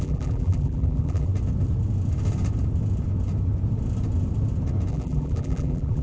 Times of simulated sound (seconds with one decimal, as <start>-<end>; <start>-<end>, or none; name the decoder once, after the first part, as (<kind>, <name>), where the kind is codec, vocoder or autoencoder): 0.0-1.3 (vocoder, BigVGAN v2); 4.9-6.0